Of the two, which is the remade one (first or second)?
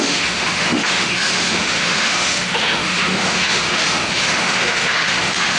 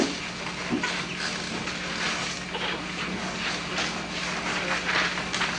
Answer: first